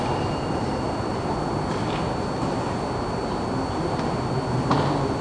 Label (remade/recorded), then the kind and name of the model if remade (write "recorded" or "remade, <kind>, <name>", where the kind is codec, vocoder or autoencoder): recorded